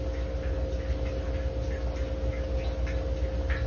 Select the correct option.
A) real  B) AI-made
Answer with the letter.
A